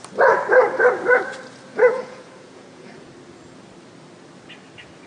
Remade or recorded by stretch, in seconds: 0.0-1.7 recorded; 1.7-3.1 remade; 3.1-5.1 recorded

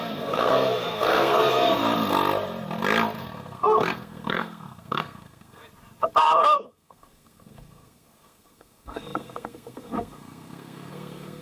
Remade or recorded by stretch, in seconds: 0.0-1.8 remade; 1.8-3.2 recorded; 3.2-5.6 remade; 5.6-6.2 recorded; 6.2-11.4 remade

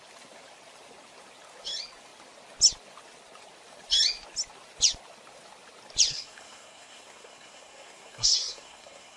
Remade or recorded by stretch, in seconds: 0.0-6.1 recorded; 6.1-9.2 remade

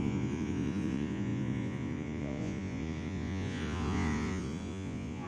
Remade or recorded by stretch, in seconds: 0.0-5.3 remade

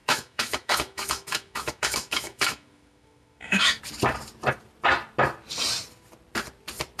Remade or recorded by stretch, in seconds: 0.0-3.8 remade; 3.8-7.0 recorded

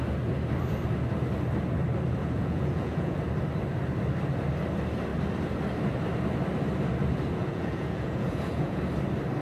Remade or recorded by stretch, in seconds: 0.0-2.2 recorded; 2.2-3.2 remade; 3.2-7.4 recorded; 7.4-8.8 remade; 8.8-9.4 recorded